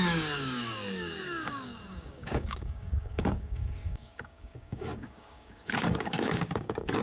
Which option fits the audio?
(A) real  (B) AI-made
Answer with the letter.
B